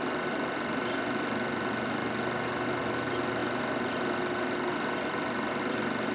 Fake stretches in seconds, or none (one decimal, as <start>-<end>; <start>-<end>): none